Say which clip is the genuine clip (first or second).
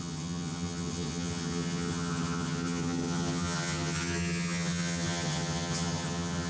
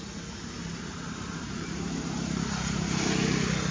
second